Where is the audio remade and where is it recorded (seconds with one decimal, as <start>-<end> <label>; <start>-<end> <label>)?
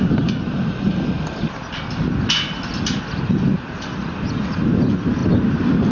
0.0-5.9 recorded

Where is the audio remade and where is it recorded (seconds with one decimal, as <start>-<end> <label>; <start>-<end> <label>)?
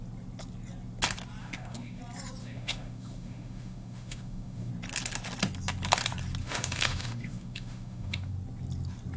0.0-1.4 recorded; 1.4-2.0 remade; 2.0-2.4 recorded; 2.4-4.7 remade; 4.7-6.4 recorded; 6.4-8.3 remade; 8.3-9.2 recorded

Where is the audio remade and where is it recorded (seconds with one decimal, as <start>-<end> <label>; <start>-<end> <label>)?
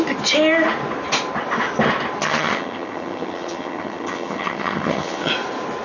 0.0-2.2 recorded; 2.2-5.3 remade; 5.3-5.8 recorded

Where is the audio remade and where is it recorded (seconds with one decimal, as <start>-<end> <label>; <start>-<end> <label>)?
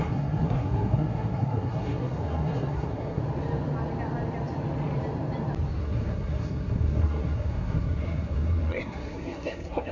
0.0-3.2 remade; 3.2-5.8 recorded; 5.8-9.9 remade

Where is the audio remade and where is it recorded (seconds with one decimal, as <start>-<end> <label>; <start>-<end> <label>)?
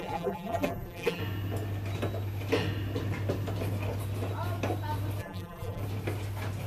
0.0-1.2 remade; 1.2-5.2 recorded; 5.2-5.8 remade; 5.8-6.7 recorded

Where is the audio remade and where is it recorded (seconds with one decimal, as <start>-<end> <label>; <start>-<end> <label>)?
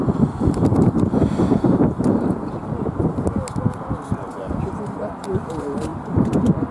0.0-6.7 recorded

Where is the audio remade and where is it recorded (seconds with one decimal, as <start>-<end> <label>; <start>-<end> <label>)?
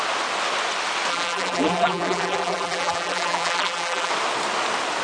0.0-1.1 recorded; 1.1-4.1 remade; 4.1-5.0 recorded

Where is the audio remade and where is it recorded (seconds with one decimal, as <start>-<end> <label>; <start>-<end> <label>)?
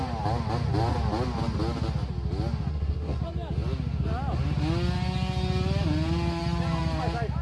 0.0-2.7 recorded; 2.7-3.2 remade; 3.2-7.4 recorded